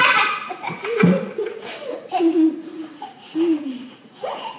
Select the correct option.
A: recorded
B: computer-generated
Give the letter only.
B